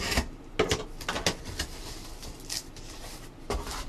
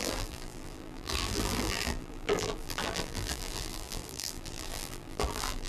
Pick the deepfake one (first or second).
second